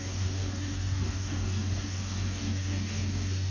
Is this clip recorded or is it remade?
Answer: remade